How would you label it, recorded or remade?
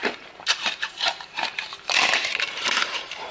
remade